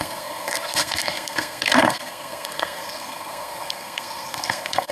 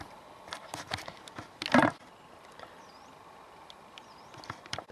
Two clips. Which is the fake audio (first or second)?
first